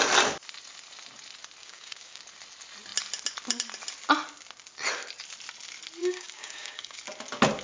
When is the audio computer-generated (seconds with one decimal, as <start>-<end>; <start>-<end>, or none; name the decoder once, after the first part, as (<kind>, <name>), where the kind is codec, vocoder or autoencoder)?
1.6-2.2 (codec, DAC); 6.0-7.0